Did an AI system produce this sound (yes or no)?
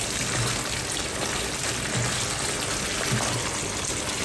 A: no